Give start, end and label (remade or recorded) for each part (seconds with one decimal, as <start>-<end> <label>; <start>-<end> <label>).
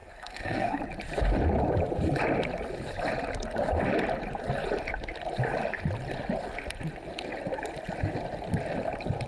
0.0-0.8 remade; 0.8-9.3 recorded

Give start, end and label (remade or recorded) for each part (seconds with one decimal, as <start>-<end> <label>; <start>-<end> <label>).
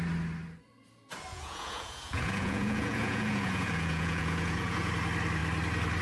0.0-1.3 recorded; 1.3-4.9 remade; 4.9-6.0 recorded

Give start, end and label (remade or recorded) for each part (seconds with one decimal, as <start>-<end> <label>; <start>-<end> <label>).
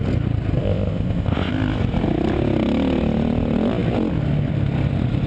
0.0-0.6 recorded; 0.6-1.5 remade; 1.5-5.3 recorded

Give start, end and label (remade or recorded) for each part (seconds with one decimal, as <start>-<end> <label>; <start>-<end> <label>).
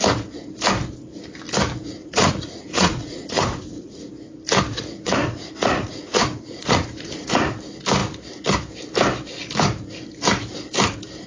0.0-2.0 recorded; 2.0-4.1 remade; 4.1-4.7 recorded; 4.7-7.6 remade; 7.6-11.3 recorded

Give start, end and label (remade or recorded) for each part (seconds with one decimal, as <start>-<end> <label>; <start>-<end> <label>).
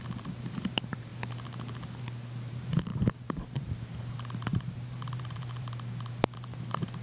0.0-1.1 remade; 1.1-2.0 recorded; 2.0-7.0 remade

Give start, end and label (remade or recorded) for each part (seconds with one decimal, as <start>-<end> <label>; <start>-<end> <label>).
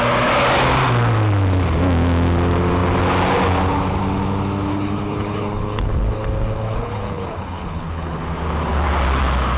0.0-4.7 recorded; 4.7-8.2 remade; 8.2-9.6 recorded